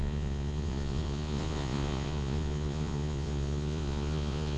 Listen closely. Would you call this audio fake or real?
fake